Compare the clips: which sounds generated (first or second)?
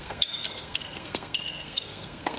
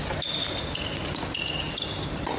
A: first